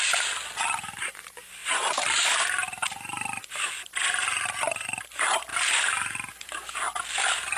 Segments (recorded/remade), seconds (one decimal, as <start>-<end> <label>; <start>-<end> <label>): 0.0-1.6 recorded; 1.6-3.7 remade; 3.7-5.5 recorded; 5.5-6.7 remade; 6.7-7.6 recorded

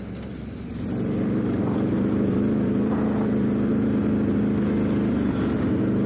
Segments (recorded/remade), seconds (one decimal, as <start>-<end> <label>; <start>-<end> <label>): 0.0-0.7 recorded; 0.7-4.4 remade; 4.4-6.1 recorded

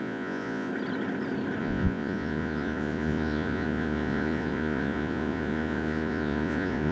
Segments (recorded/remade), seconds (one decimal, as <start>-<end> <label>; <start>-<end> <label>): 0.0-0.7 remade; 0.7-1.6 recorded; 1.6-6.9 remade

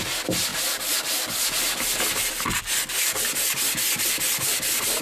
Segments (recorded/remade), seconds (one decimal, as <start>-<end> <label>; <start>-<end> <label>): 0.0-5.0 recorded

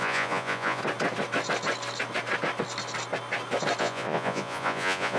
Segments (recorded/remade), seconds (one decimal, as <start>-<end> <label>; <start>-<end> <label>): 0.0-0.8 remade; 0.8-3.8 recorded; 3.8-5.2 remade

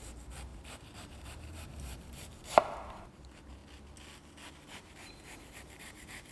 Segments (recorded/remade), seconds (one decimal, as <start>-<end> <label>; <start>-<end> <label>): 0.0-3.6 remade; 3.6-4.5 recorded; 4.5-6.3 remade